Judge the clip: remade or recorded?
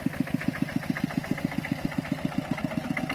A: recorded